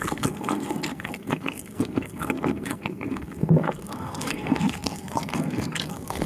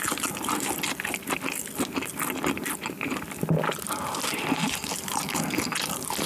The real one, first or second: second